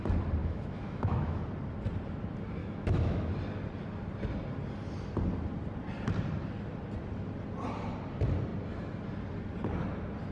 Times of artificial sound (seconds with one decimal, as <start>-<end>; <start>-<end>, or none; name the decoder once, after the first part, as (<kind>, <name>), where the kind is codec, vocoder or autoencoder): 0.4-1.4 (autoencoder, DAC-VAE); 2.6-3.3